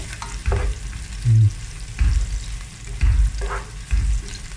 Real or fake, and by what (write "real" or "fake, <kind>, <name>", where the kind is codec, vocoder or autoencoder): real